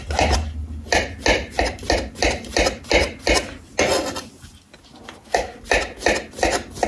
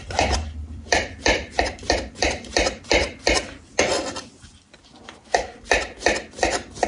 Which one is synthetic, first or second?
second